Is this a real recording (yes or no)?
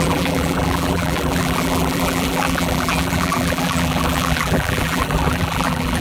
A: no